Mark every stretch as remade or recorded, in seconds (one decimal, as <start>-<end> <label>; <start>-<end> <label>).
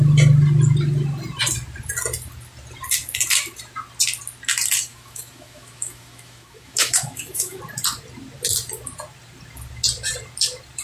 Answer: 0.0-4.9 recorded; 4.9-7.6 remade; 7.6-10.8 recorded